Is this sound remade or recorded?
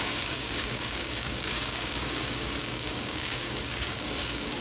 remade